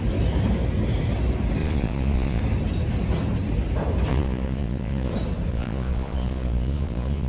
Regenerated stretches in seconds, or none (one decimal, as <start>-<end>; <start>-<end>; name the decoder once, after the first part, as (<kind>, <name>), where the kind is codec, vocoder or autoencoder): 1.6-2.4 (vocoder, Vocos); 4.1-5.1; 5.5-7.3